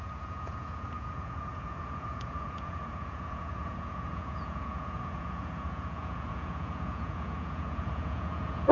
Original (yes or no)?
no